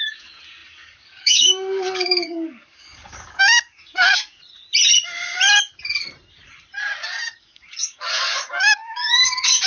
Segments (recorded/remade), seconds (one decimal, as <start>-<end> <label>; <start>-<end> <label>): 0.0-4.4 remade; 4.4-7.4 recorded; 7.4-9.7 remade